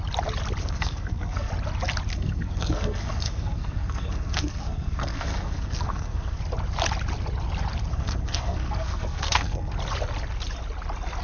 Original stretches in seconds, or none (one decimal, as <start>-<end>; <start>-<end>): 0.0-0.6; 1.5-2.1; 6.4-7.9; 9.7-11.2